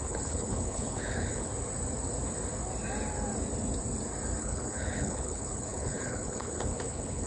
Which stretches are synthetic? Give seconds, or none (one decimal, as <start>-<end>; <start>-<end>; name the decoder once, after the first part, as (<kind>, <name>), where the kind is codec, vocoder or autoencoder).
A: 0.0-1.5 (codec, HILCodec); 4.4-7.3